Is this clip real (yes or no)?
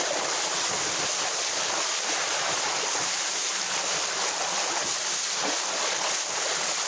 yes